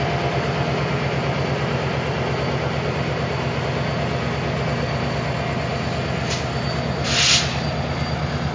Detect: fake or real real